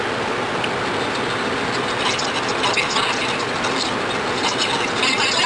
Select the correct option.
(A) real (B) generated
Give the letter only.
A